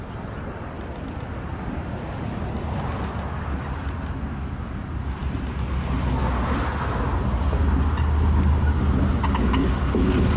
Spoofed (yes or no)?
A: no